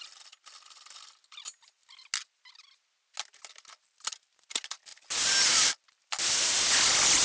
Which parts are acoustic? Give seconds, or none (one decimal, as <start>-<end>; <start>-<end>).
0.0-7.2